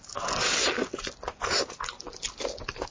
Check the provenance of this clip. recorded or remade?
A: recorded